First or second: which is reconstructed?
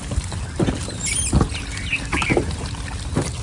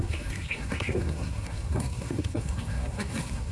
second